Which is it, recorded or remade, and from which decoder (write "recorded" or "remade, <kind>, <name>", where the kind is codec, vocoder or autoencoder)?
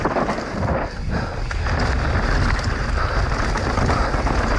remade, vocoder, BigVGAN v2